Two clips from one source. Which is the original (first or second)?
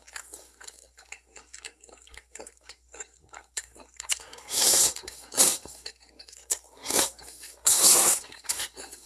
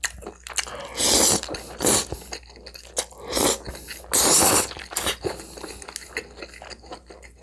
second